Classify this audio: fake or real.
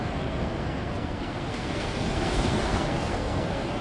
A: fake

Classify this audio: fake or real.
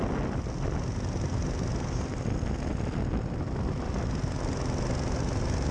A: real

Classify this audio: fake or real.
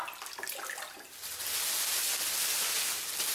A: real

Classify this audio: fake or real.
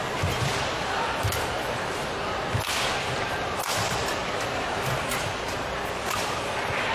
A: real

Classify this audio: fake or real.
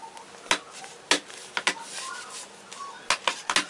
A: real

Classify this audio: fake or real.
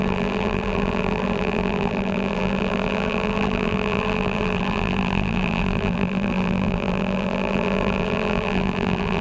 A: fake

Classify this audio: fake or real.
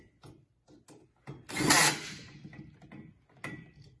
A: real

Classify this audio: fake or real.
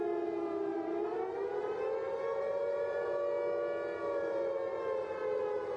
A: real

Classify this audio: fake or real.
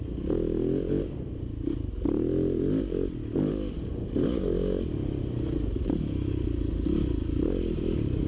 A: real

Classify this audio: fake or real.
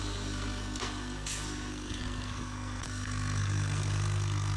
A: fake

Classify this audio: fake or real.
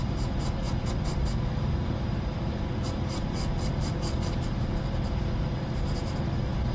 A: fake